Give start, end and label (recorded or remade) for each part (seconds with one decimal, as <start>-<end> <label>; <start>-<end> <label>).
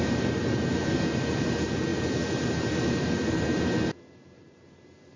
0.0-5.2 remade